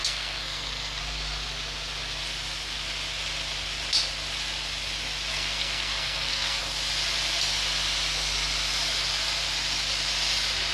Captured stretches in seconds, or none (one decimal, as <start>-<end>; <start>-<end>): 1.0-5.3; 6.6-10.7